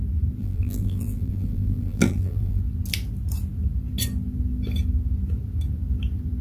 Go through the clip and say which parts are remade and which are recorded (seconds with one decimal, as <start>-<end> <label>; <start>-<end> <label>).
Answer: 0.0-0.4 recorded; 0.4-2.6 remade; 2.6-6.4 recorded